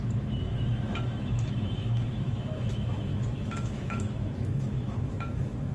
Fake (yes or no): yes